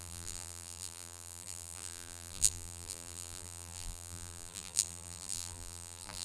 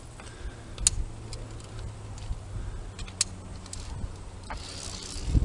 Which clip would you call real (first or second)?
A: second